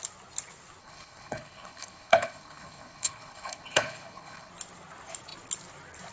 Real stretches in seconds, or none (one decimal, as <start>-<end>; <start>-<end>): 0.0-0.8; 4.5-6.1

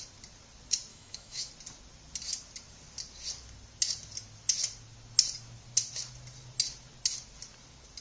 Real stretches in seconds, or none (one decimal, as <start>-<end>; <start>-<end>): 0.0-0.9; 1.5-8.0